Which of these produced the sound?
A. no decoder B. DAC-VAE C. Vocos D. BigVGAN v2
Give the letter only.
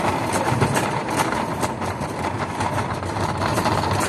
D